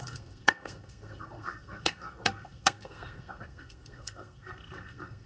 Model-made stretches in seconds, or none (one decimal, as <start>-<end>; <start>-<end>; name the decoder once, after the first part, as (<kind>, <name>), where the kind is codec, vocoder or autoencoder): 0.0-5.3 (codec, SNAC)